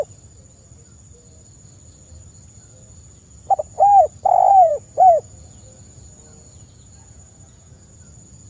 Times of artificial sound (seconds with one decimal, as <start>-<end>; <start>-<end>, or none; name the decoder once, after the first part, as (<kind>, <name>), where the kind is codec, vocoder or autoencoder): 4.5-7.9 (vocoder, Vocos)